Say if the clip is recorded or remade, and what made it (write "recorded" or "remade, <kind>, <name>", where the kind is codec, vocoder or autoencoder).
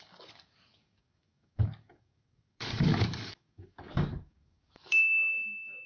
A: remade, codec, DAC